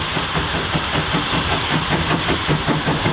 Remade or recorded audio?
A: recorded